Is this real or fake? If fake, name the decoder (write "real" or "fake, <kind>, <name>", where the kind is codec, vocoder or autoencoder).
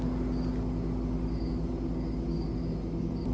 real